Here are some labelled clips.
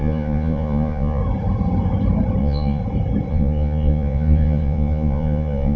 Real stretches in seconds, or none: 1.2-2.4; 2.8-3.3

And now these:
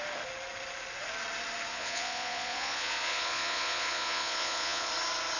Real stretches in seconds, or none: 0.0-1.7; 4.9-5.4

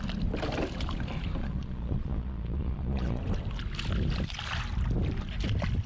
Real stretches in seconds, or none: 0.0-1.4; 3.2-5.9

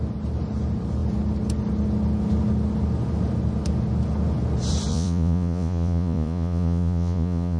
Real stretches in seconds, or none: 0.0-4.9

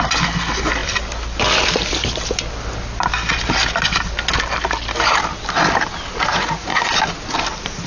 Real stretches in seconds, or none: 0.0-6.3; 6.9-7.9

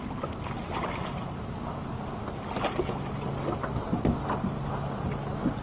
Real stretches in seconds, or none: 0.0-5.6